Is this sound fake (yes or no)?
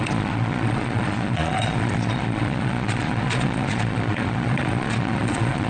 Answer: yes